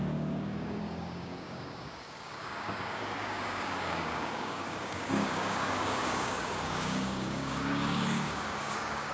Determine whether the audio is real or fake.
fake